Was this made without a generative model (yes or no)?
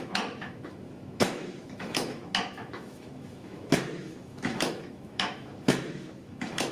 no